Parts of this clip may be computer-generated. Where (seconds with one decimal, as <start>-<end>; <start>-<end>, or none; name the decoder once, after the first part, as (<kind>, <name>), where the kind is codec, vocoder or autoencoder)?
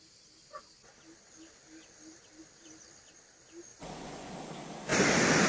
3.7-4.3 (vocoder, Vocos)